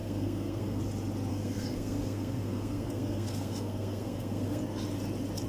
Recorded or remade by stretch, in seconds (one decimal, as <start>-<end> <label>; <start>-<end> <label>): 0.0-0.8 remade; 0.8-1.3 recorded; 1.3-4.6 remade; 4.6-5.5 recorded